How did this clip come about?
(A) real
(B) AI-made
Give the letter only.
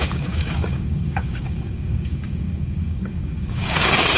B